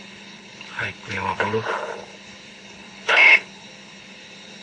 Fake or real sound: fake